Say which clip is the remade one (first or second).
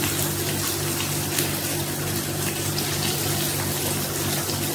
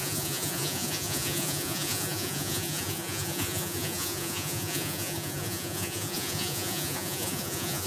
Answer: second